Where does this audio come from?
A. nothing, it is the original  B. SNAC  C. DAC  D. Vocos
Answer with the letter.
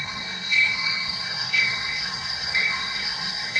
B